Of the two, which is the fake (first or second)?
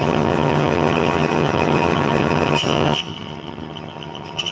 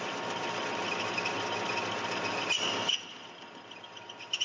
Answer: first